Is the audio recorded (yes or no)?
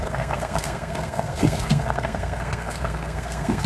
no